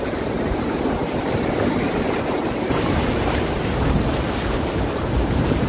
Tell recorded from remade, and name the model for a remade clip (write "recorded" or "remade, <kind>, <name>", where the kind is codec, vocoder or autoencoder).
remade, vocoder, BigVGAN v2